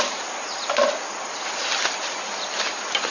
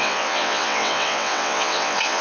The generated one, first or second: second